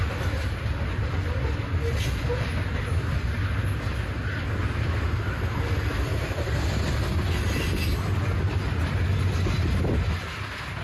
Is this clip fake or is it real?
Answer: real